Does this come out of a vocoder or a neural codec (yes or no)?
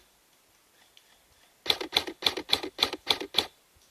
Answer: no